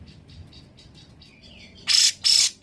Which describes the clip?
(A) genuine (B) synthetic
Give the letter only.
A